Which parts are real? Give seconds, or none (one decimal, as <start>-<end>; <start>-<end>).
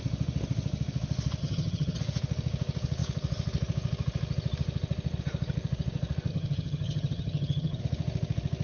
0.0-1.4; 2.0-6.3; 7.8-8.6